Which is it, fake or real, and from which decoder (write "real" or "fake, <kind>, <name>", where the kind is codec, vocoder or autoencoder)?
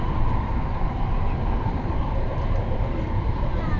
fake, vocoder, BigVGAN v2